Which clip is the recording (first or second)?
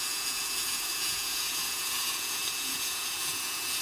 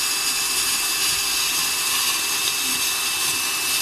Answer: second